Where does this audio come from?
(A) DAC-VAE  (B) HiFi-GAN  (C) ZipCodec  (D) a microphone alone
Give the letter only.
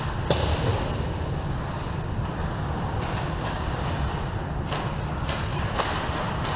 D